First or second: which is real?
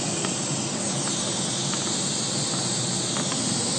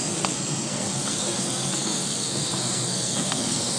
first